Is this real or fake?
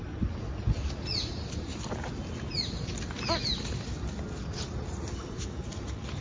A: real